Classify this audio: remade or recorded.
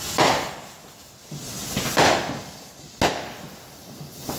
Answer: recorded